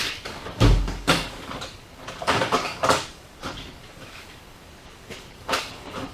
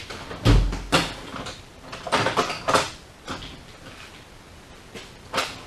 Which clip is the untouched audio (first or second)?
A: second